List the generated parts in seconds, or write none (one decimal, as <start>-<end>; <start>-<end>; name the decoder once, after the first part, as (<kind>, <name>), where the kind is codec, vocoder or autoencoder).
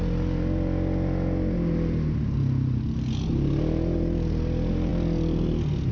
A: none